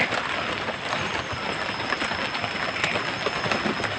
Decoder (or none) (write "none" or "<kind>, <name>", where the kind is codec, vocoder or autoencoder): none